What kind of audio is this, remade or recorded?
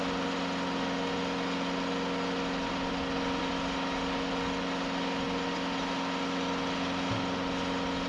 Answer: recorded